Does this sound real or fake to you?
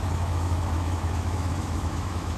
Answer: fake